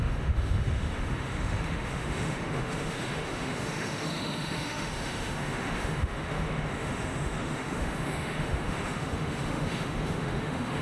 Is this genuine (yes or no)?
no